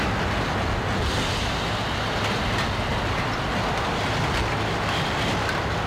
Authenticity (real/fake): real